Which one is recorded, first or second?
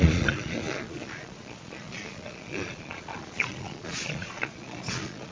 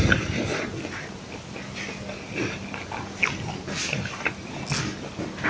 second